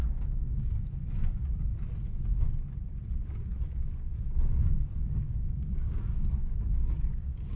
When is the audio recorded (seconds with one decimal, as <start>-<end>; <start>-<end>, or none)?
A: 1.7-3.3